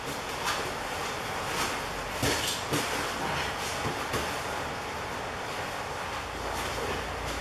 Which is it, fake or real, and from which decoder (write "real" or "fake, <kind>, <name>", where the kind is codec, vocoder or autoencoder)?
real